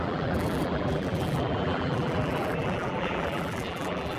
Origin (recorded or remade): remade